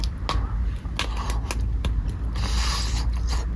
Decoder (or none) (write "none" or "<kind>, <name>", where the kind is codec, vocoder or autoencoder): none